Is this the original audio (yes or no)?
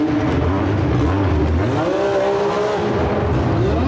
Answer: yes